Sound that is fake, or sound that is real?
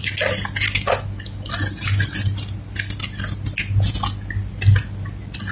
real